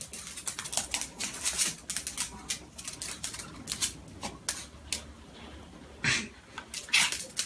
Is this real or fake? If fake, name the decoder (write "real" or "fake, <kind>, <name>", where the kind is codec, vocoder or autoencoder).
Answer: real